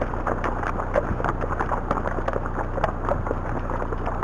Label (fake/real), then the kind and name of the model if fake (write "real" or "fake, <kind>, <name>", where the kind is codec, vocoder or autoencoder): real